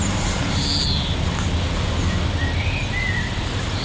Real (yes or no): yes